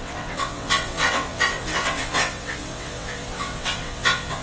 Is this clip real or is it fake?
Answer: fake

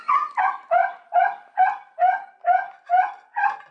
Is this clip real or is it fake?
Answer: real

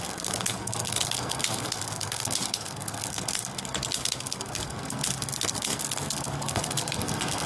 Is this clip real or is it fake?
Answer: fake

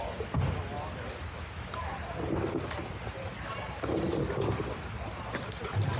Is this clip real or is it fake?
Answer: real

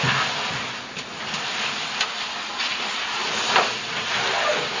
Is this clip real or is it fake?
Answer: real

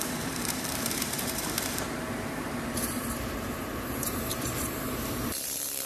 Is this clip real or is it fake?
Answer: fake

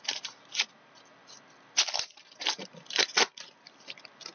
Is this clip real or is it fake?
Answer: real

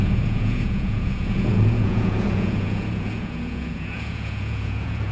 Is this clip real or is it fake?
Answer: fake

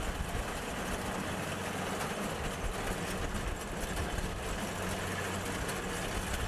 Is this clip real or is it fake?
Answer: real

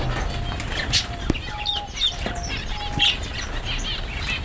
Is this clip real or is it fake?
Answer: real